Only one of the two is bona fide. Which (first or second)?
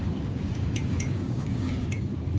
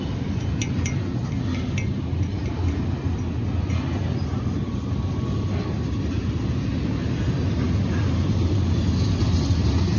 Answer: second